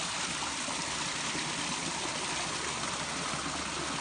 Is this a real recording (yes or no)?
yes